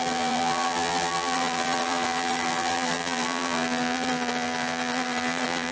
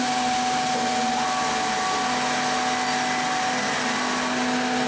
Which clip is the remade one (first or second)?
first